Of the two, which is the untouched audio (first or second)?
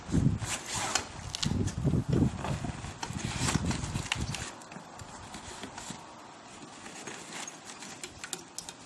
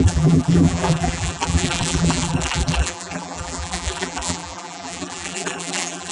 first